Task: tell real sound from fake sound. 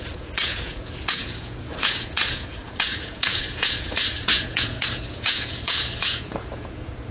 fake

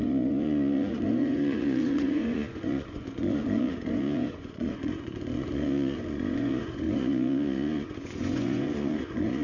fake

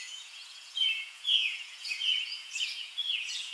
fake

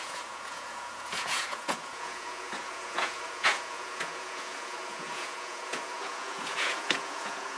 fake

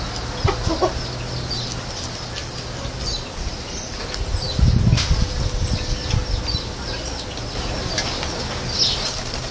real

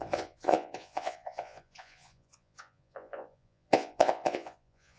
fake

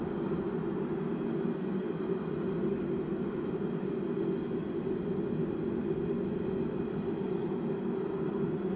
real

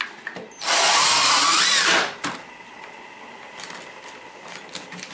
real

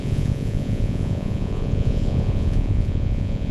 fake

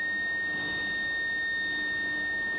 real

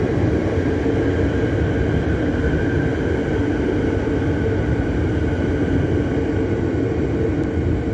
real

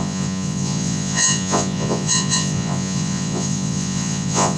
fake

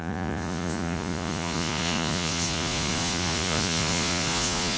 fake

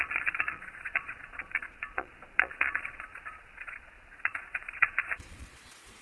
fake